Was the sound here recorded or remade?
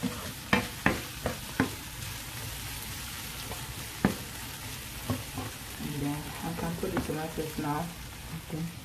recorded